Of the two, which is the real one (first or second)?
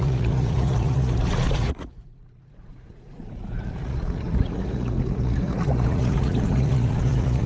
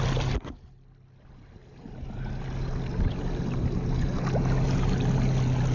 second